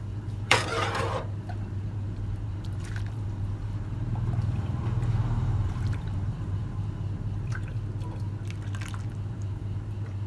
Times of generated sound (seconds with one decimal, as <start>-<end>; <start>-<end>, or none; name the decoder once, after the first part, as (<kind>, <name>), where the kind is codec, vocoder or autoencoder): 0.0-7.7 (vocoder, BigVGAN v2); 9.3-10.3